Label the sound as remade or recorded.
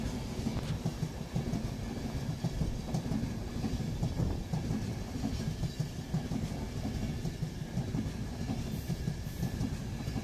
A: recorded